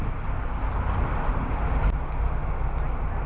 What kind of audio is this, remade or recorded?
recorded